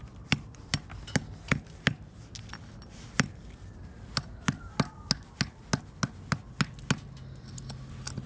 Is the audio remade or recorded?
recorded